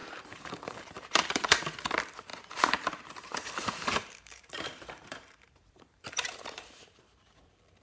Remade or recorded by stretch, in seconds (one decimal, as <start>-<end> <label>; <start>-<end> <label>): 0.0-1.6 remade; 1.6-2.3 recorded; 2.3-7.0 remade; 7.0-7.8 recorded